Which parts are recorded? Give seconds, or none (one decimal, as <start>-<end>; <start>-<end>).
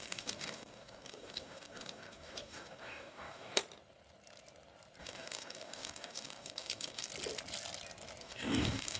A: 3.6-5.0; 7.1-8.2